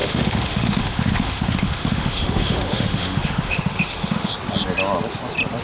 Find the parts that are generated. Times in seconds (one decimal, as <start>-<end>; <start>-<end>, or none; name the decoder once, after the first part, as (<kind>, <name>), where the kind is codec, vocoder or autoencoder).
0.0-4.3 (autoencoder, DAC-VAE)